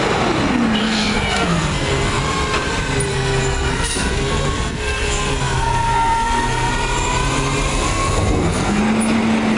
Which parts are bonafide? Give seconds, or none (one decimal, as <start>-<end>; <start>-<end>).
0.0-0.8; 2.2-3.1; 6.7-7.7; 8.8-9.6